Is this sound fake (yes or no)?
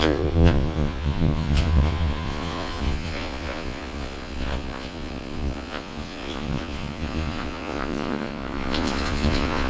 yes